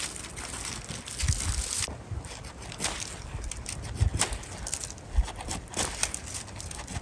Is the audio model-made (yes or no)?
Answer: no